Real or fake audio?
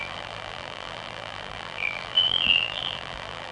fake